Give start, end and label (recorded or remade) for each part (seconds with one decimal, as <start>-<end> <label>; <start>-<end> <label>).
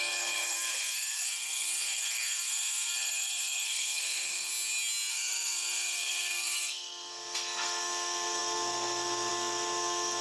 0.0-4.5 remade; 4.5-5.1 recorded; 5.1-10.2 remade